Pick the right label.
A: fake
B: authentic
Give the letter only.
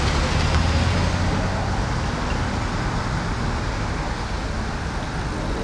B